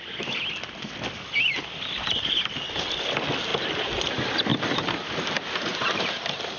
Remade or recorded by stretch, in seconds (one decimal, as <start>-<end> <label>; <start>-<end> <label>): 0.0-4.5 recorded; 4.5-5.1 remade; 5.1-5.7 recorded; 5.7-6.6 remade